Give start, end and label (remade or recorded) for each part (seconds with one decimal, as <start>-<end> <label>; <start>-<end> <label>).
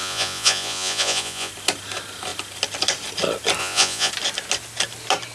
0.0-1.5 remade; 1.5-3.6 recorded; 3.6-4.1 remade; 4.1-5.3 recorded